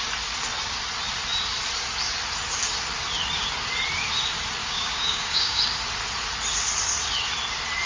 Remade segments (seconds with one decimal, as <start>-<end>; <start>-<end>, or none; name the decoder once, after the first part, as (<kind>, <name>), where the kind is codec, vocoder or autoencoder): 4.6-5.6 (codec, DAC)